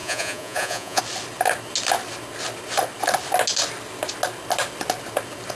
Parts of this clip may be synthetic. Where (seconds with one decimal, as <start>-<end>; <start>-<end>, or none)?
0.0-1.0